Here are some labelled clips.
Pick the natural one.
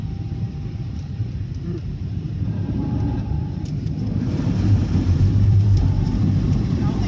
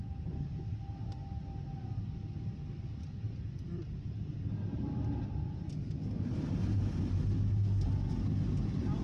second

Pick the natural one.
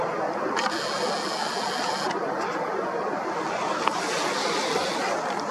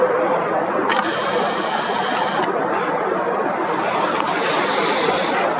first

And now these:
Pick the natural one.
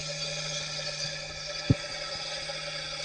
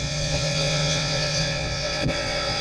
first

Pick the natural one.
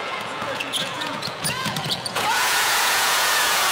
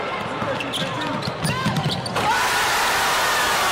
second